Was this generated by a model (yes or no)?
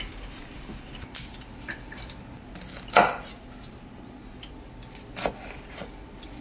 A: no